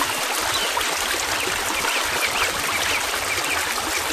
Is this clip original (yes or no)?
yes